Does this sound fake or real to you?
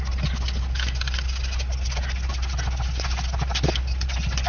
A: real